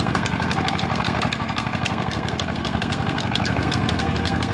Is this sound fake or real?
fake